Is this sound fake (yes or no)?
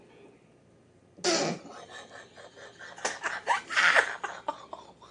no